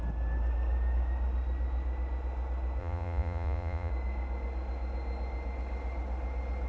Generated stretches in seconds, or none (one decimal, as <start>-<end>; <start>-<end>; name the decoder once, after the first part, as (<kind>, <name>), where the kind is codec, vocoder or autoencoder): 2.8-3.9 (vocoder, Vocos)